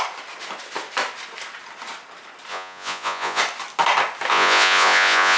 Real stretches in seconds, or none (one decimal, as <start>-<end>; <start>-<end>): 0.0-2.5; 3.4-4.3